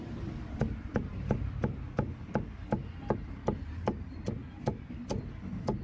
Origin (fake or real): real